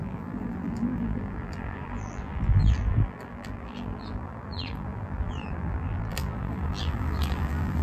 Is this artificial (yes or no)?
yes